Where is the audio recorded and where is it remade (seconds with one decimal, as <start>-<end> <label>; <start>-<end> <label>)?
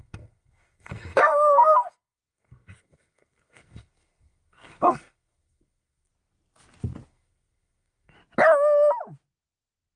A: 0.0-6.1 remade; 6.1-7.1 recorded; 7.1-8.2 remade; 8.2-10.0 recorded